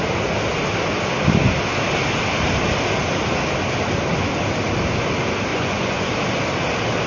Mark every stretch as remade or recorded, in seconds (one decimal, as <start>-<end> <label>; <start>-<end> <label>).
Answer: 0.0-5.5 recorded; 5.5-6.1 remade; 6.1-7.1 recorded